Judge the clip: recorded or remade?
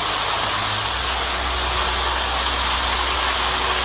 recorded